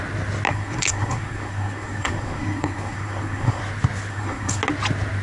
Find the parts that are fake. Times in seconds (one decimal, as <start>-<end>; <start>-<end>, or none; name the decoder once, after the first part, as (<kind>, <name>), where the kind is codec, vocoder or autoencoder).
0.5-3.6 (codec, SNAC); 4.1-4.6